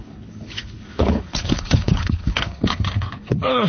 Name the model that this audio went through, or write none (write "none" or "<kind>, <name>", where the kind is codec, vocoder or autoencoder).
codec, HILCodec